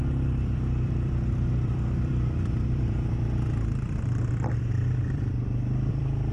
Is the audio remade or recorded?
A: remade